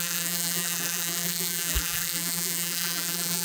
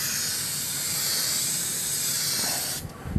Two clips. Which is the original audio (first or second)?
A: second